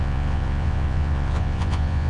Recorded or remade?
remade